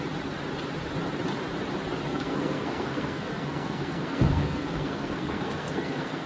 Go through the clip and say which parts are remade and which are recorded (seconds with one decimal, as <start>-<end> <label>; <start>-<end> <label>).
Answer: 0.0-2.1 recorded; 2.1-6.3 remade